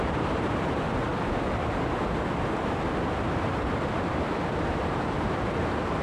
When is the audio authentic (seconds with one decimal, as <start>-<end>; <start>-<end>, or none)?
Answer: 1.1-4.7